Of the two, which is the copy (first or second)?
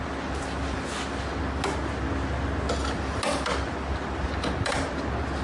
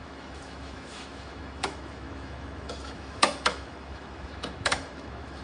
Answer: second